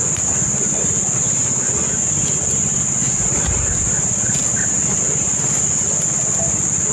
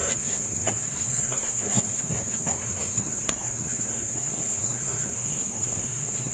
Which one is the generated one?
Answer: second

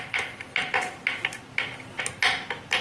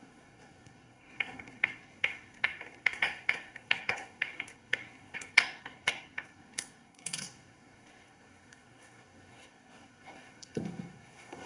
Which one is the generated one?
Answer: second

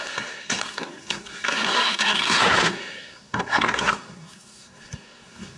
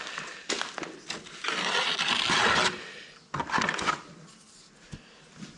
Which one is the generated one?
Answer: first